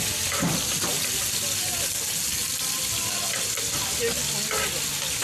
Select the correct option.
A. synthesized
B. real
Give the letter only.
B